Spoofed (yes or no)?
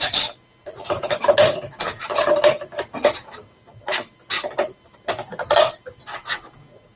no